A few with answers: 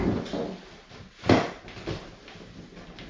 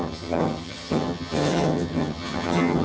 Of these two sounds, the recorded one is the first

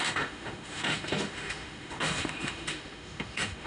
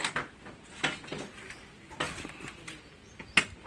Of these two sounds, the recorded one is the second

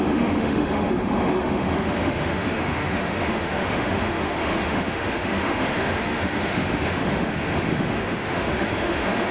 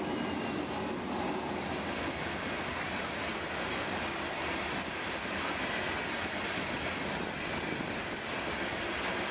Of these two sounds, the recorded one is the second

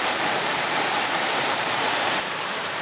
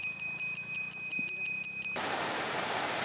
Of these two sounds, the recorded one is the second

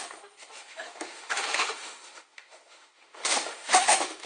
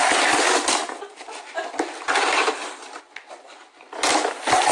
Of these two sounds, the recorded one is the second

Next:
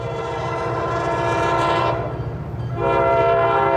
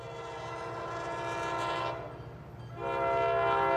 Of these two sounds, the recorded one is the second